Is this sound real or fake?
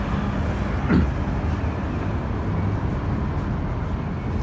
real